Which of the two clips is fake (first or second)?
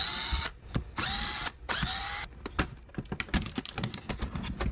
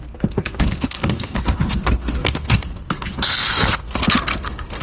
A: second